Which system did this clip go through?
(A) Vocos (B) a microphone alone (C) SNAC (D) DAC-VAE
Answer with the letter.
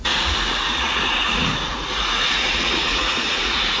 A